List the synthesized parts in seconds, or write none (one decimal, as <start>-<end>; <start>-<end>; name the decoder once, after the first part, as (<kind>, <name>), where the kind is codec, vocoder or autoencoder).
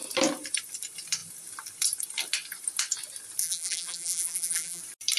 3.4-4.8 (vocoder, BigVGAN v2)